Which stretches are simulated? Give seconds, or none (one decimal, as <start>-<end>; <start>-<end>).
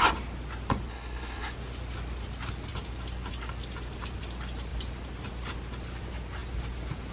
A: 0.9-1.5